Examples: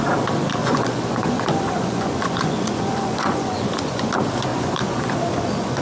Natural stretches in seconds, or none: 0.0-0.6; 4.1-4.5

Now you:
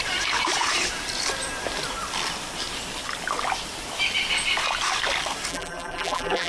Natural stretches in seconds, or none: 0.0-5.5

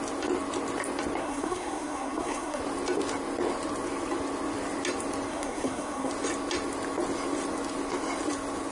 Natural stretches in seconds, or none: 0.0-1.2; 2.6-5.3; 6.1-8.7

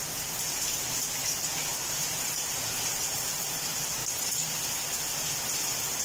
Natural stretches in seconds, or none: 4.0-6.0

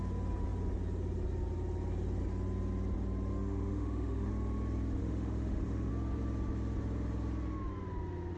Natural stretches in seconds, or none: 0.0-3.3; 4.3-5.0; 5.9-8.4